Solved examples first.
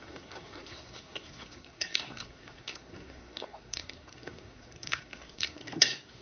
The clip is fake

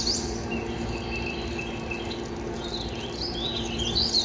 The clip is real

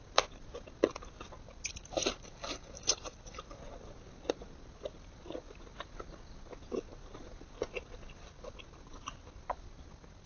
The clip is real